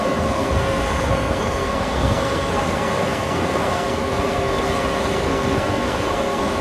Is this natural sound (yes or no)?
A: no